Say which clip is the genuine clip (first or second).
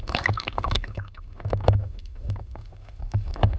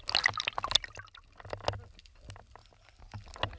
second